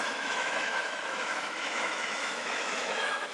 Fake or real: fake